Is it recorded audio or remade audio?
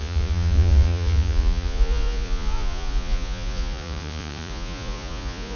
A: remade